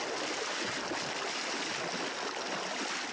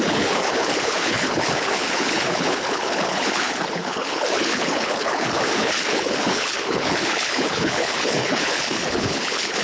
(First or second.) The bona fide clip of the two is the first